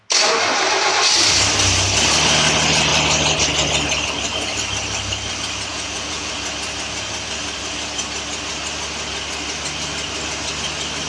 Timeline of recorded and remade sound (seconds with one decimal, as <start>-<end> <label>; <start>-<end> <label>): 0.0-5.7 recorded; 5.7-6.3 remade; 6.3-11.1 recorded